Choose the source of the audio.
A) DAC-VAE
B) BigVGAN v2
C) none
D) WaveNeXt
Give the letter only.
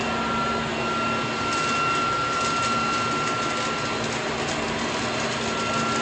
C